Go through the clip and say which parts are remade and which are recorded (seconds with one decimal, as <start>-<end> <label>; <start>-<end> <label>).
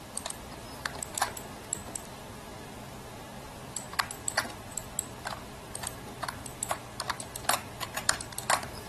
0.0-6.4 remade; 6.4-7.3 recorded; 7.3-8.9 remade